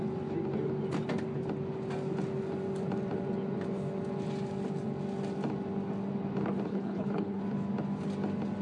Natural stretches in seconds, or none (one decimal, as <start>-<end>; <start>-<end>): 0.0-6.7; 7.4-8.6